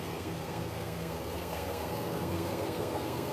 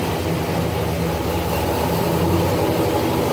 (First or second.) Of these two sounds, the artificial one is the first